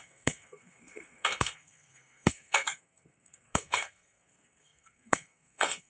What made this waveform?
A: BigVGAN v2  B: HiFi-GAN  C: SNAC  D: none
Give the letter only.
C